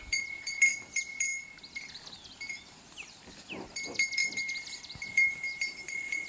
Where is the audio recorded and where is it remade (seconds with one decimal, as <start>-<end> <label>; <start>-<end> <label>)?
0.0-1.3 remade; 1.3-1.8 recorded; 1.8-6.3 remade